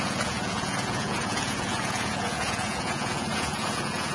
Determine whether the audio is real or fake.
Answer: fake